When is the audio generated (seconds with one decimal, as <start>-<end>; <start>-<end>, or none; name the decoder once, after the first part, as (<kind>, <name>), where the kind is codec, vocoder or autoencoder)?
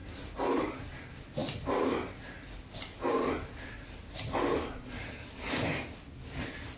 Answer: none